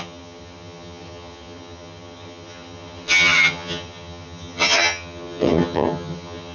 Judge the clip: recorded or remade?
remade